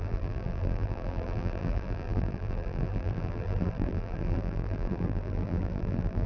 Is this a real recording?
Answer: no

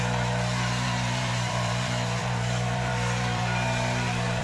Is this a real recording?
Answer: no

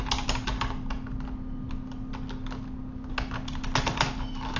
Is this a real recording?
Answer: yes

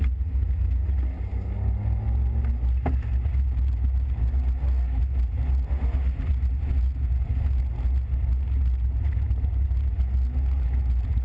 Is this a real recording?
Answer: yes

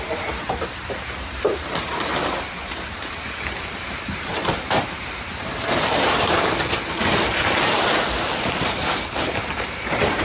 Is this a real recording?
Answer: no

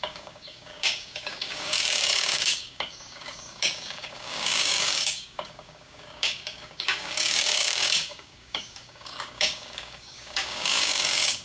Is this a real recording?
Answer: no